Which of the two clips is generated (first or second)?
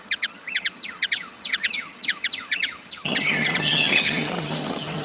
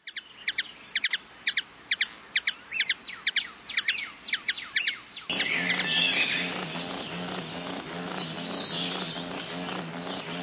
first